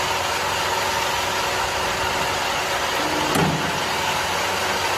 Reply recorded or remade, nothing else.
recorded